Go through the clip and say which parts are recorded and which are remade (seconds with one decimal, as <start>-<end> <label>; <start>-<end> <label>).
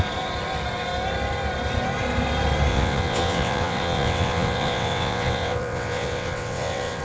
0.0-2.7 recorded; 2.7-7.0 remade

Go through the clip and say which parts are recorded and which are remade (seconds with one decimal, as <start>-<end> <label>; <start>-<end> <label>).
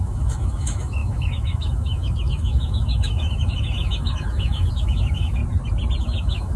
0.0-5.4 remade; 5.4-6.0 recorded; 6.0-6.6 remade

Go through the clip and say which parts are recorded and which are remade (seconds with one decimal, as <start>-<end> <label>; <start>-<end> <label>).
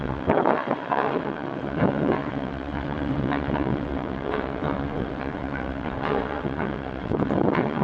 0.0-7.8 remade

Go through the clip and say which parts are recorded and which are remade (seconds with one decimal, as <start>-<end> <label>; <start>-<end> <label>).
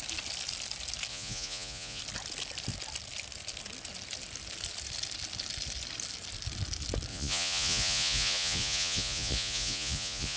0.0-1.1 recorded; 1.1-2.0 remade; 2.0-7.1 recorded; 7.1-10.4 remade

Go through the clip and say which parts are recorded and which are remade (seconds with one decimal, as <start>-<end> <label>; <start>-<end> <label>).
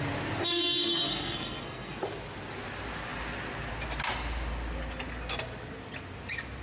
0.0-0.4 recorded; 0.4-2.0 remade; 2.0-6.6 recorded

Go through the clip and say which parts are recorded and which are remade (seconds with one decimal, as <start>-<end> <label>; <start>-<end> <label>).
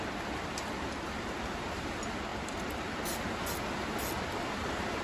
0.0-5.0 recorded